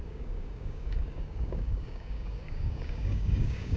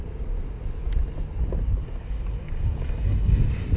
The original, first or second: second